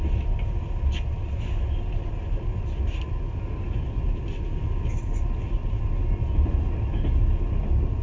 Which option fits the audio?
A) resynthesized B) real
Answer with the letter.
B